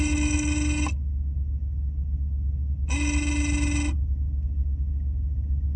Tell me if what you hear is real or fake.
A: real